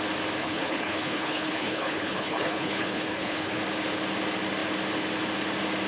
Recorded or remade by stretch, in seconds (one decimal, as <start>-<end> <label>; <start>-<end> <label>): 0.0-0.4 recorded; 0.4-3.6 remade; 3.6-5.9 recorded